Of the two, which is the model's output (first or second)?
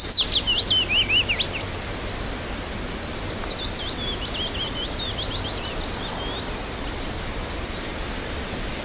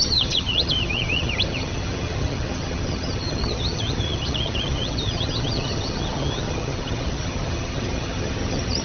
second